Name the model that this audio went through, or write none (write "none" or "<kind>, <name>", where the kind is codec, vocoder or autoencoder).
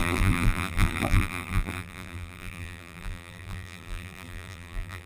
vocoder, BigVGAN v2